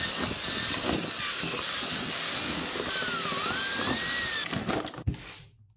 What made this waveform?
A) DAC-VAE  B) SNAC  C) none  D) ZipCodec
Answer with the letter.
C